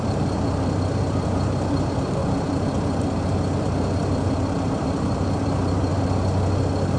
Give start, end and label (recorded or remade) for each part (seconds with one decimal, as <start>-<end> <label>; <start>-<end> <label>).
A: 0.0-2.2 remade; 2.2-3.0 recorded; 3.0-5.9 remade; 5.9-6.6 recorded; 6.6-7.0 remade